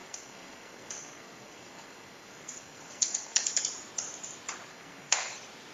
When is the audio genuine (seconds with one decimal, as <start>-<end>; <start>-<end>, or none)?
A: 3.4-4.7; 5.3-5.7